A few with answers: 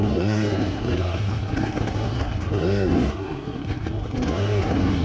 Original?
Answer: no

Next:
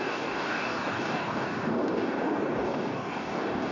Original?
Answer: no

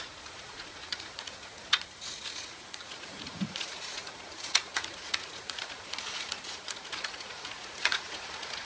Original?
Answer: no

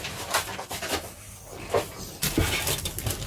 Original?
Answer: yes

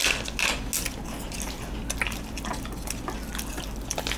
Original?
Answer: yes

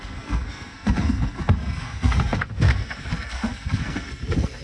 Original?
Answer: no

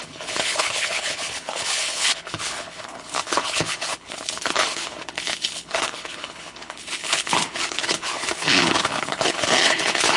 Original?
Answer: no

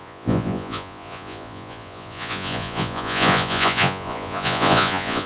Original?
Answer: no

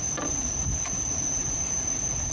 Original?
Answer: no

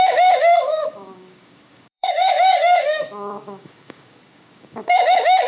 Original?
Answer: no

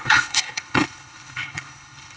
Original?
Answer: no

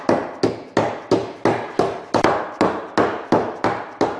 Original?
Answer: yes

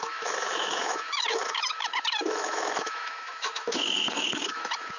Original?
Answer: no